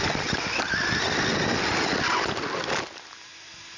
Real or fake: real